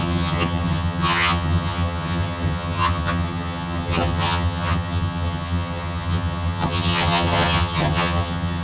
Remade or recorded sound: remade